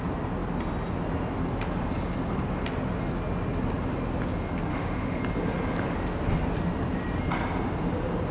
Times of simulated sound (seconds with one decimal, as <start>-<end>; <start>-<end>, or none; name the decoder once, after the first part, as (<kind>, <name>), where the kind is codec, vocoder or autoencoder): 4.7-5.2 (autoencoder, DAC-VAE)